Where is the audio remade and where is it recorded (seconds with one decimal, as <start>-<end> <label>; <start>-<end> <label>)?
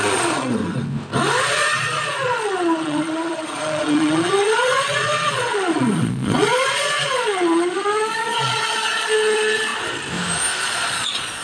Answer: 0.0-0.6 remade; 0.6-1.4 recorded; 1.4-9.7 remade; 9.7-10.6 recorded; 10.6-11.4 remade